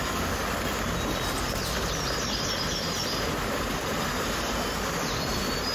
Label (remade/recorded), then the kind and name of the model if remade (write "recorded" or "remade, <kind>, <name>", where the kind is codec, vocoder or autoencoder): recorded